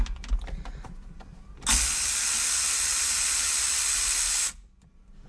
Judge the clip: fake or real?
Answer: real